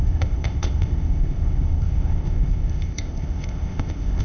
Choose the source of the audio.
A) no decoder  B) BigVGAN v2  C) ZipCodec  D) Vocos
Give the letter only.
C